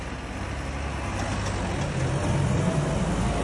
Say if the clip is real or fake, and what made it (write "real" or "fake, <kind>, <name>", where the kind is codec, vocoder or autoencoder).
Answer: real